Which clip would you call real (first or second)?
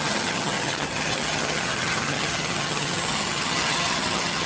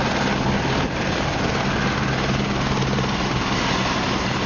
second